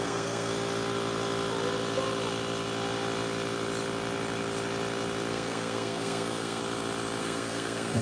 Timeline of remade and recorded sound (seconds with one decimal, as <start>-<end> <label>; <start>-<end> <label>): 0.0-0.5 remade; 0.5-5.3 recorded; 5.3-6.6 remade; 6.6-7.2 recorded; 7.2-8.0 remade